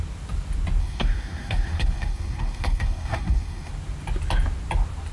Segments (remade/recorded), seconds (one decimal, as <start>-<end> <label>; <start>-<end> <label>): 0.0-0.8 recorded; 0.8-3.7 remade; 3.7-5.1 recorded